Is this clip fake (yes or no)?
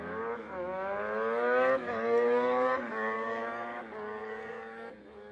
yes